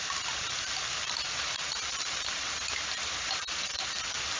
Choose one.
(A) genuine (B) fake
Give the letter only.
B